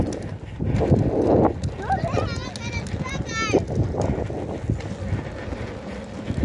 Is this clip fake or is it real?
real